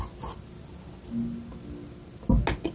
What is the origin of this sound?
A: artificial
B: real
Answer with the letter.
B